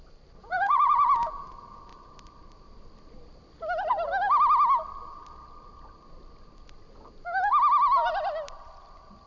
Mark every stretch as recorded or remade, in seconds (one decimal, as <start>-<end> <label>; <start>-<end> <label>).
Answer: 0.0-0.4 recorded; 0.4-1.5 remade; 1.5-9.3 recorded